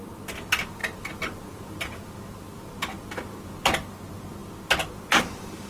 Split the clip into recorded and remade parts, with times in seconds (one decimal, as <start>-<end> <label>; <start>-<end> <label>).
0.0-5.7 recorded